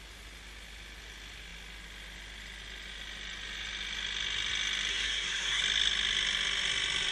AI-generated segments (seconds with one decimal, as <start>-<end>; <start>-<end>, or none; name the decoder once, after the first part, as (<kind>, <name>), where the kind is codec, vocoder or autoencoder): 4.9-5.6 (codec, SNAC)